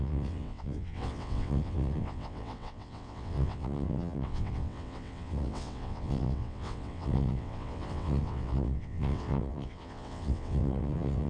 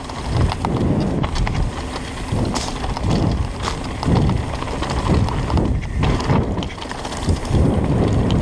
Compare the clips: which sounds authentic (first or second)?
second